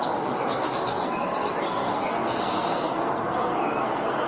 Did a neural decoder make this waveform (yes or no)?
yes